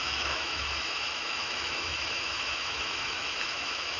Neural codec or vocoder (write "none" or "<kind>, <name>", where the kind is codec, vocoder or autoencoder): autoencoder, DAC-VAE